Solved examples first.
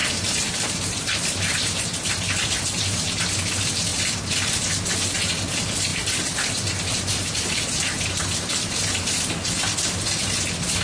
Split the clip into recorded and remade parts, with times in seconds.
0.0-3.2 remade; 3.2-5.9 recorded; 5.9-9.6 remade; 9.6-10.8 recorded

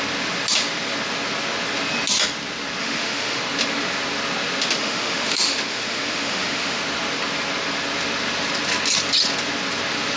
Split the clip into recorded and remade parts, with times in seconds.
0.0-2.8 recorded; 2.8-3.4 remade; 3.4-4.8 recorded; 4.8-6.8 remade; 6.8-10.2 recorded

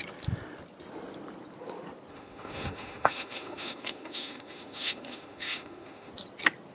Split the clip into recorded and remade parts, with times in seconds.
0.0-2.1 recorded; 2.1-6.1 remade; 6.1-6.7 recorded

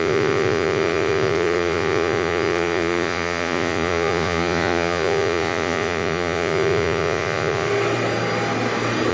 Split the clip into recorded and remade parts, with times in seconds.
0.0-7.7 remade; 7.7-9.1 recorded

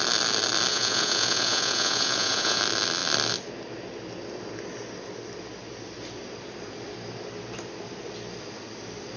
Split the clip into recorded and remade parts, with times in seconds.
0.0-0.7 recorded; 0.7-2.6 remade; 2.6-9.2 recorded

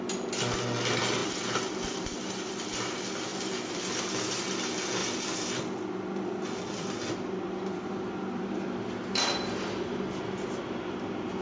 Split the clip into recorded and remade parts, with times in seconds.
0.0-1.2 recorded; 1.2-2.9 remade; 2.9-3.3 recorded; 3.3-4.1 remade; 4.1-5.0 recorded; 5.0-8.5 remade; 8.5-11.4 recorded

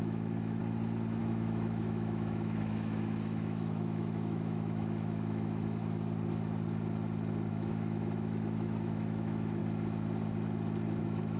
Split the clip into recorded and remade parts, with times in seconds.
0.0-0.6 remade; 0.6-1.2 recorded; 1.2-5.8 remade; 5.8-7.5 recorded; 7.5-9.6 remade; 9.6-11.0 recorded; 11.0-11.4 remade